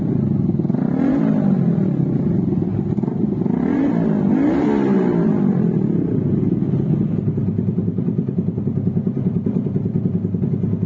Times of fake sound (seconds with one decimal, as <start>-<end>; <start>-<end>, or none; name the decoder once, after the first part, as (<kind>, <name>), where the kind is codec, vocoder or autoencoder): 7.4-10.4 (vocoder, BigVGAN v2)